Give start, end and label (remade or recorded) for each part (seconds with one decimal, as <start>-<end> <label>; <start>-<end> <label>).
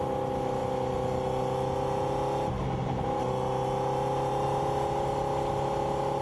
0.0-6.2 recorded